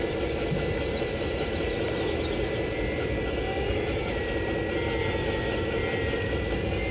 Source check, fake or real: real